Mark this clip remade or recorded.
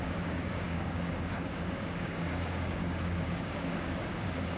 remade